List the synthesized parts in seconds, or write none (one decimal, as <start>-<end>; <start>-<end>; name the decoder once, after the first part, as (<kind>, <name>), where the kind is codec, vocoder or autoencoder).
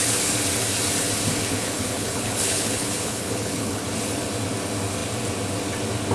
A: 1.5-3.8 (codec, HILCodec)